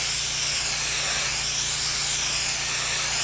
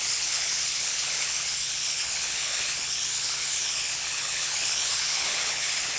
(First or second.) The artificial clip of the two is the second